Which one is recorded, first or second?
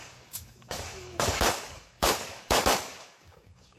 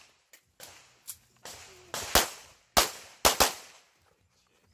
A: second